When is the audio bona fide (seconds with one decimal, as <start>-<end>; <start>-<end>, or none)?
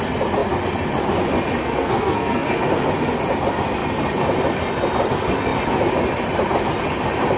0.0-1.6; 2.6-7.4